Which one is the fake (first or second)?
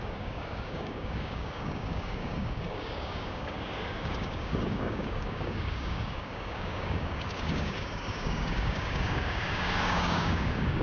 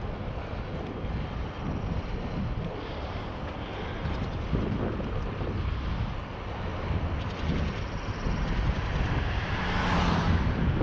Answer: first